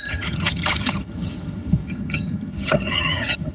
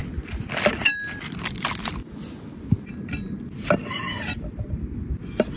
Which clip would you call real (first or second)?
second